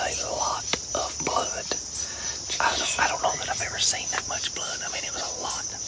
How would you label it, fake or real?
real